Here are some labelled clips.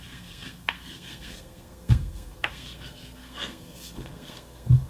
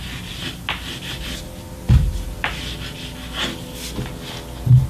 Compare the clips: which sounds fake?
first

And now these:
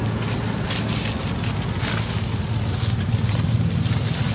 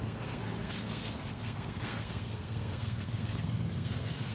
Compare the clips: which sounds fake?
second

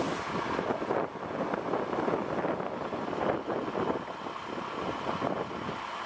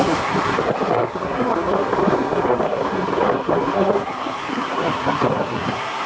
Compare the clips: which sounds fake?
second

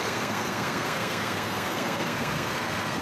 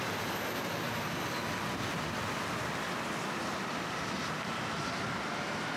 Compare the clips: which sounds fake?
first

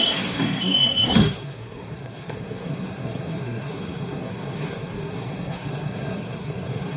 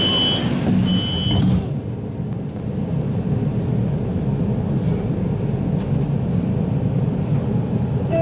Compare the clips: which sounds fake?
first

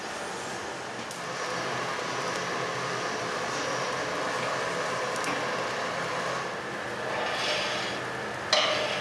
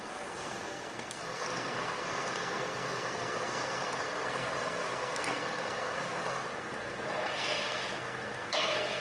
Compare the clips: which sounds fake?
second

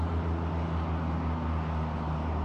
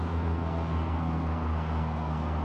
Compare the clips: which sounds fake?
second